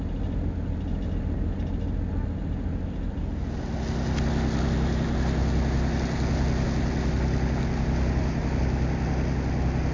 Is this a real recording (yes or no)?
yes